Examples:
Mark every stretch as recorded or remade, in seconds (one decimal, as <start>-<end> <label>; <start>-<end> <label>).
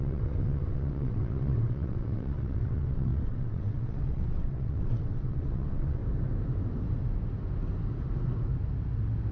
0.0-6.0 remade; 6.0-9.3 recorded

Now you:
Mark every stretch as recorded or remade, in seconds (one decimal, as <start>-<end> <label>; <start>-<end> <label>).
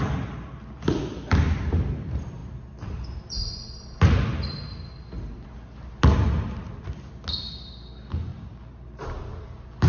0.0-9.9 recorded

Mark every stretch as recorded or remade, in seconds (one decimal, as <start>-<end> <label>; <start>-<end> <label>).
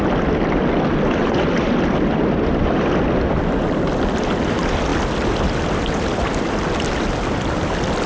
0.0-8.1 recorded